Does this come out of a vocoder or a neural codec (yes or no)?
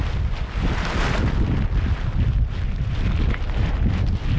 no